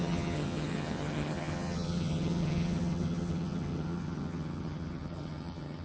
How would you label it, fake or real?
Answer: fake